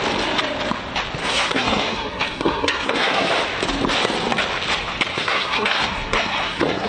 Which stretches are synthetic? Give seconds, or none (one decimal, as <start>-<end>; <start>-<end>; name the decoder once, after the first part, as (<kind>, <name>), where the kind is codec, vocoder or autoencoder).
1.2-3.3 (codec, SNAC); 5.1-6.9